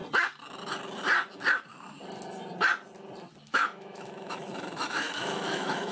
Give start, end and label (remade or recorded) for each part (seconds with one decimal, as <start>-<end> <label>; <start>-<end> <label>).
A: 0.0-3.5 recorded; 3.5-5.9 remade